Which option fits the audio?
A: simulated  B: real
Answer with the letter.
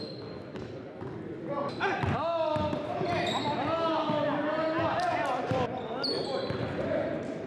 B